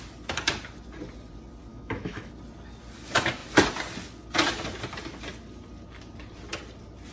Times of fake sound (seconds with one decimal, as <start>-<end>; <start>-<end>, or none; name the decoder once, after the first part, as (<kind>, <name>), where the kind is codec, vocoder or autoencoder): 1.7-2.3 (autoencoder, DAC-VAE)